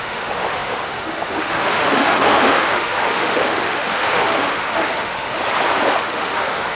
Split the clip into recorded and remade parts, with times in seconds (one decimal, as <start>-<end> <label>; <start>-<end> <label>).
0.0-5.4 remade; 5.4-6.0 recorded; 6.0-6.8 remade